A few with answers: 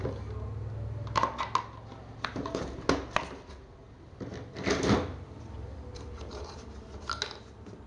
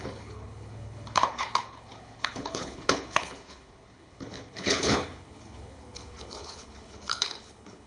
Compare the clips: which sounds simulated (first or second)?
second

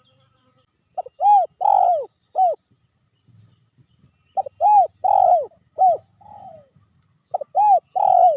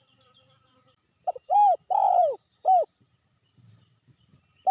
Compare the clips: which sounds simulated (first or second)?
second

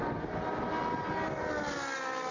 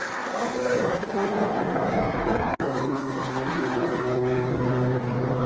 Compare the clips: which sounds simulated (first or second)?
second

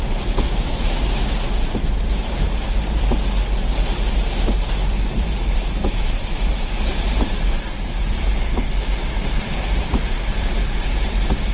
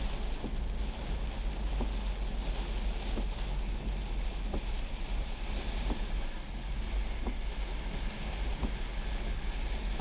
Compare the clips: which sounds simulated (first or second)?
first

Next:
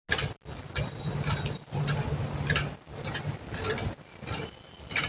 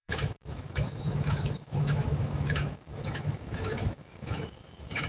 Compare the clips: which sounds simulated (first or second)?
second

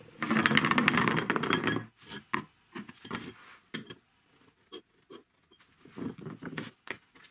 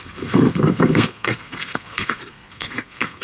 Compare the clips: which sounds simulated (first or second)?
second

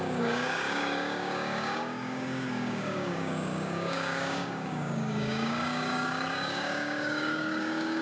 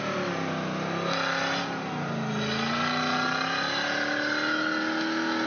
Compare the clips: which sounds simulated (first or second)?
first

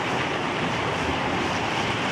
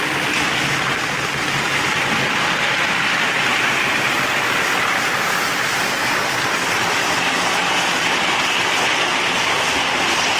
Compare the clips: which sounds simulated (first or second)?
first